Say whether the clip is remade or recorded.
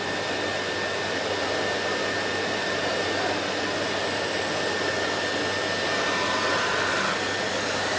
recorded